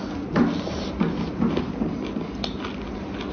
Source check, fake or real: real